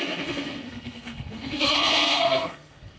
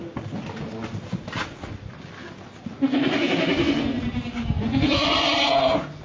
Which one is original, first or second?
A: second